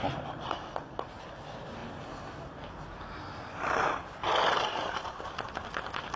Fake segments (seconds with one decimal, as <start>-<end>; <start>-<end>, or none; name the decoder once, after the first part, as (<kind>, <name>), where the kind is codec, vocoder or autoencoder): none